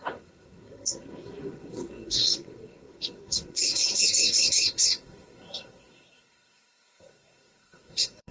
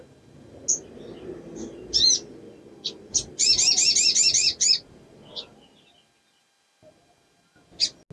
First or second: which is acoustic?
second